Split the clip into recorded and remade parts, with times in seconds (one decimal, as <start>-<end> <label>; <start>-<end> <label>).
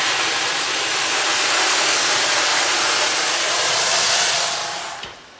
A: 0.0-1.6 recorded; 1.6-2.1 remade; 2.1-5.4 recorded